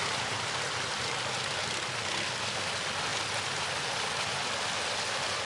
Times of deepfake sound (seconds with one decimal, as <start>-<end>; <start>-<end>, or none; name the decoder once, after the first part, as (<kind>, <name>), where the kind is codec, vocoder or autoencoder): none